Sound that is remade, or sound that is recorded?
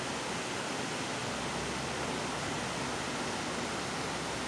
recorded